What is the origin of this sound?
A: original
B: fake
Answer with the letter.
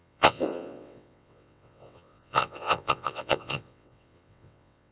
B